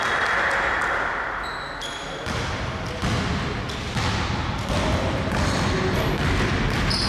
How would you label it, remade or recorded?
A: recorded